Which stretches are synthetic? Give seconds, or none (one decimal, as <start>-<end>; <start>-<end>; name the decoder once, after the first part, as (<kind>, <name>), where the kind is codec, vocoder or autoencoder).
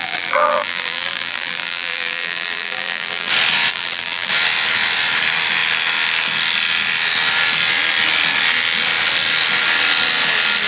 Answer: 0.0-3.3 (vocoder, BigVGAN v2); 3.7-4.3